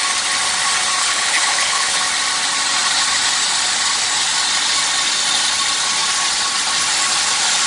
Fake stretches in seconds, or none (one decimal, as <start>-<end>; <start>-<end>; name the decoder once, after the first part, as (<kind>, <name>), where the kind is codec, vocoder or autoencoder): 1.0-2.0 (codec, HILCodec)